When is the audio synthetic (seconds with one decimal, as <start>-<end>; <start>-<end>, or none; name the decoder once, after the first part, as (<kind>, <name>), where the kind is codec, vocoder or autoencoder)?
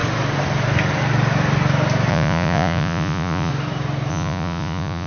2.1-3.5 (vocoder, Vocos); 4.1-5.1